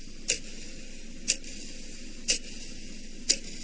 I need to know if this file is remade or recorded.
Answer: recorded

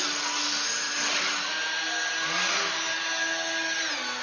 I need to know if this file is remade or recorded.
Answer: recorded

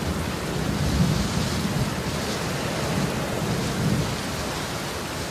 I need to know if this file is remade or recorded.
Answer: recorded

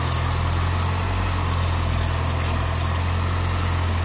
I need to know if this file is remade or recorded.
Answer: recorded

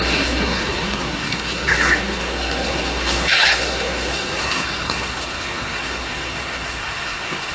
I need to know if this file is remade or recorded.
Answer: remade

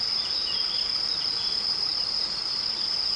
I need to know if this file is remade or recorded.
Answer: recorded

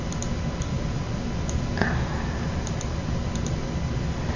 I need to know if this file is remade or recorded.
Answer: recorded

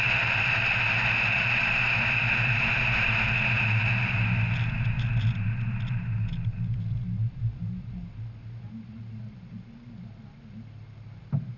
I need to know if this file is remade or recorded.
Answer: recorded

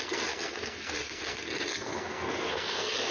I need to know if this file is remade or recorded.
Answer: remade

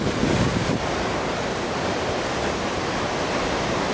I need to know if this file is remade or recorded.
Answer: recorded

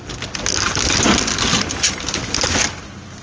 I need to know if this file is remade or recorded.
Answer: recorded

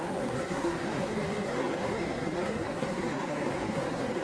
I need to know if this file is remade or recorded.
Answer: remade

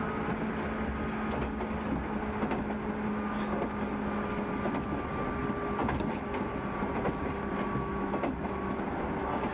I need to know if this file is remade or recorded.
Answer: recorded